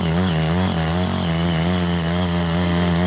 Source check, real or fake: real